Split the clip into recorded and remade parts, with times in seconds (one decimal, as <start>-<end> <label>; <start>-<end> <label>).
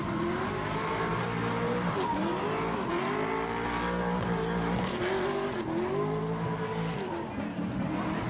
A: 0.0-8.3 recorded